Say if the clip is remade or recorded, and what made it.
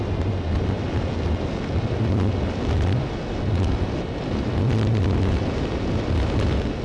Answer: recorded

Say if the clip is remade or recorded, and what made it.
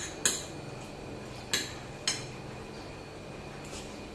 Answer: recorded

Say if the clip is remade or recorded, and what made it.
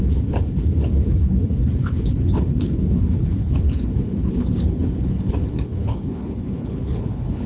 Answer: remade, codec, HILCodec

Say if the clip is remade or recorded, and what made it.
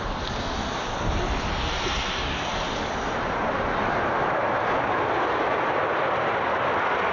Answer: recorded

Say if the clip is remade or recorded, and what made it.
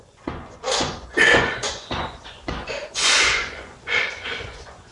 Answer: remade, vocoder, Vocos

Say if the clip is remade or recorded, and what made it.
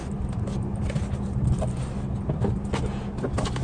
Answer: recorded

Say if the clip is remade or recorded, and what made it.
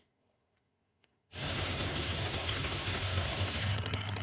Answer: remade, codec, SNAC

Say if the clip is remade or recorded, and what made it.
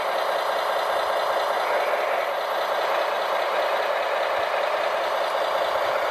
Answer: recorded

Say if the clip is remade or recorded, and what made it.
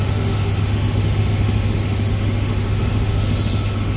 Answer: remade, autoencoder, DAC-VAE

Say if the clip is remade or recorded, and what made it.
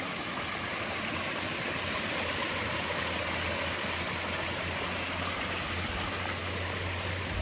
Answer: recorded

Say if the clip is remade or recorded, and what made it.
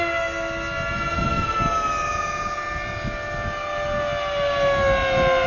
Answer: recorded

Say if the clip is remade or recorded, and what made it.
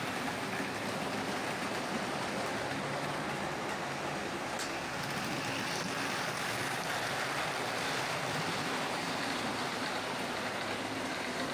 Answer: recorded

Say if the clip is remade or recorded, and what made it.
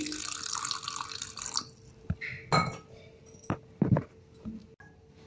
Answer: recorded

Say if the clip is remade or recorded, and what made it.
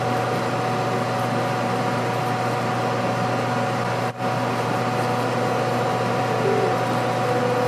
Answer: recorded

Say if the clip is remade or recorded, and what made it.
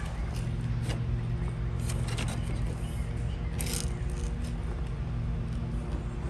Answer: recorded